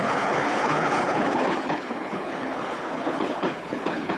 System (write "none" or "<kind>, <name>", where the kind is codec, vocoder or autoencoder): codec, HILCodec